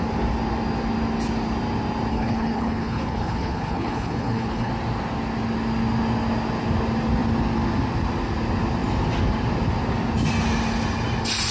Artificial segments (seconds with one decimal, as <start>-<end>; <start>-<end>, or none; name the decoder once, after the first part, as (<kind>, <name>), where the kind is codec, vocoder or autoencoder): 2.1-4.7 (codec, HILCodec)